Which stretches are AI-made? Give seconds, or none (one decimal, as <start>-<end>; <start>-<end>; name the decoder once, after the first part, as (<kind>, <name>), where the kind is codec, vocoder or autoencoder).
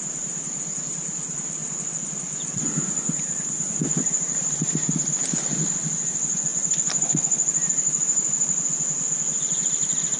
none